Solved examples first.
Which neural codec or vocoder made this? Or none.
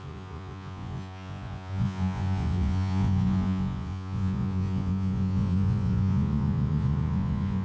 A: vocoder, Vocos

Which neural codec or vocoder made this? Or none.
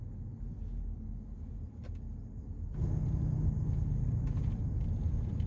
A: none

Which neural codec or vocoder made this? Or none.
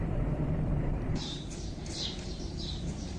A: vocoder, BigVGAN v2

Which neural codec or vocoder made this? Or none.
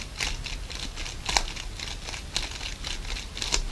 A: none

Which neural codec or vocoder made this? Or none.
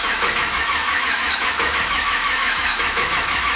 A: autoencoder, DAC-VAE